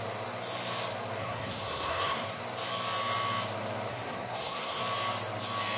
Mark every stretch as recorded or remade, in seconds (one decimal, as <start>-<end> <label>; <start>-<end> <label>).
0.0-1.2 recorded; 1.2-2.4 remade; 2.4-3.9 recorded; 3.9-4.8 remade; 4.8-5.8 recorded